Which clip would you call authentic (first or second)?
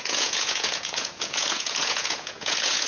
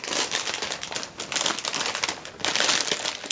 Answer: second